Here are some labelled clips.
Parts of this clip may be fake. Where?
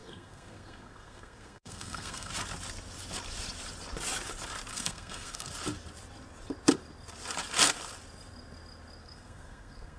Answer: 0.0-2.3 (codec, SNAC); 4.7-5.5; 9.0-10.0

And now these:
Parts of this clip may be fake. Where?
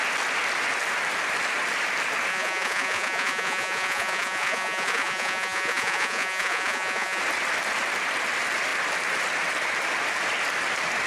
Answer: 2.3-7.2 (vocoder, Vocos)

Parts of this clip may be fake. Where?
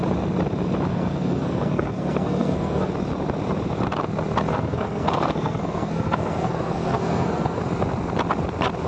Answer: 0.9-2.9 (codec, SNAC); 4.5-7.6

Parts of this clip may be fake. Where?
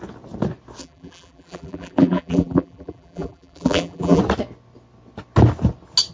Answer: 0.8-4.2 (vocoder, BigVGAN v2)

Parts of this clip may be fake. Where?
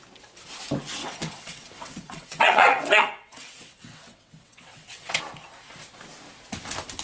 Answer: 1.0-5.2 (vocoder, WaveNeXt)